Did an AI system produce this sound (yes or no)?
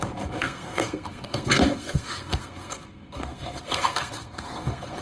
yes